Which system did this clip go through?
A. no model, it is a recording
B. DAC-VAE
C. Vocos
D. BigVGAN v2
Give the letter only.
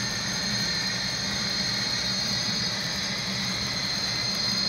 D